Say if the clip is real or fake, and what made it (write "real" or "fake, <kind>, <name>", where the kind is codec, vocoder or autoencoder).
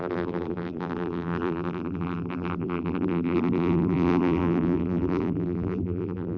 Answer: fake, vocoder, BigVGAN v2